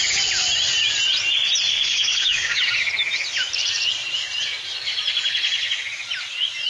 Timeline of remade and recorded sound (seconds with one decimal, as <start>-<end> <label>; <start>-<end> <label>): 0.0-1.7 recorded; 1.7-2.6 remade; 2.6-6.7 recorded